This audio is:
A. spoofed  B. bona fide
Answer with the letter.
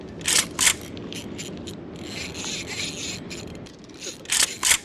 B